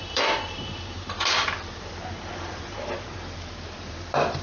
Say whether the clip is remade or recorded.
remade